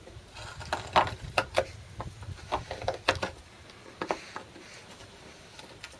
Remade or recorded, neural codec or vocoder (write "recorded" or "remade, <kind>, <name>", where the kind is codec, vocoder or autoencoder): recorded